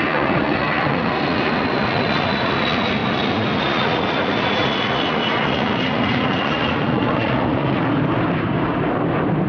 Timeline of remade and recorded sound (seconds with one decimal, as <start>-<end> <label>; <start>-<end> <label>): 0.0-7.8 remade; 7.8-9.5 recorded